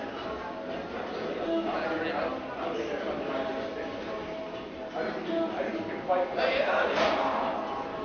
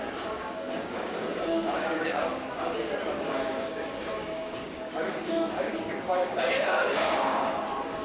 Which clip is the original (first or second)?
first